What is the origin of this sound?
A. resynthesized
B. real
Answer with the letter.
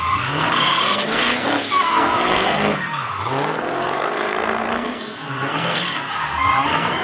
A